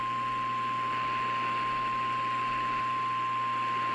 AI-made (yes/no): no